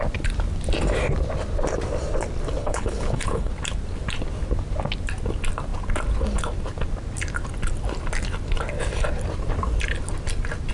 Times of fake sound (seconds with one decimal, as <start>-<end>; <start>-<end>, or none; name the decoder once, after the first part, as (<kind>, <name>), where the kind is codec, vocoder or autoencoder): 2.6-3.5 (codec, HILCodec)